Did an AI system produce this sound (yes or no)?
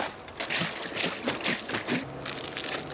no